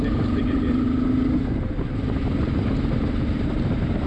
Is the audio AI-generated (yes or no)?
yes